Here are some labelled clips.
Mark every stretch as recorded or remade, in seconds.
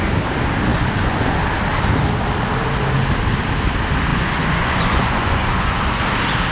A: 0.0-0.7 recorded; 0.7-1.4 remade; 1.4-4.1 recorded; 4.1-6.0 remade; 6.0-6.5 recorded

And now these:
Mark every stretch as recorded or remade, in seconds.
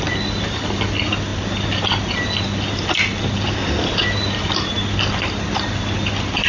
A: 0.0-6.5 recorded